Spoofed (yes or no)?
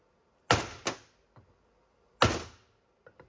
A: no